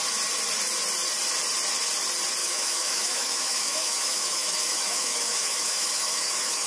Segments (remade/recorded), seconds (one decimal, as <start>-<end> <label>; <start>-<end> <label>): 0.0-2.4 recorded; 2.4-6.7 remade